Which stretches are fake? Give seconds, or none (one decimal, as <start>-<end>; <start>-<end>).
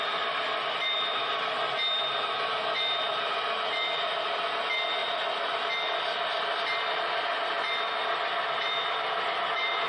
none